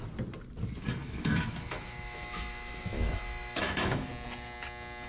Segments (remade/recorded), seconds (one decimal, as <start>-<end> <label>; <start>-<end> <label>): 0.0-1.0 recorded; 1.0-4.1 remade; 4.1-5.1 recorded